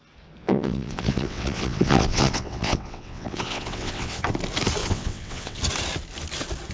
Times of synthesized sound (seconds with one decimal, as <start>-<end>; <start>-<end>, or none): 0.4-4.2; 4.8-5.6